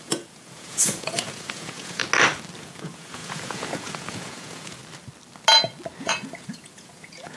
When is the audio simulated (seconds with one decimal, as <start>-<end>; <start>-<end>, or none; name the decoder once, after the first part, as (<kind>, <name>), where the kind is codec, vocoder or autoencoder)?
0.0-2.0 (vocoder, Vocos); 2.6-4.8; 6.0-7.4